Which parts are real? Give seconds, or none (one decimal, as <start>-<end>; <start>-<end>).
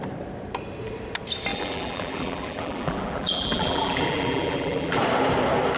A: 0.0-1.5; 5.0-5.8